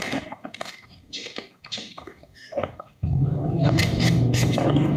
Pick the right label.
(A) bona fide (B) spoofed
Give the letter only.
B